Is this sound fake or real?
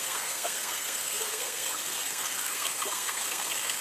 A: fake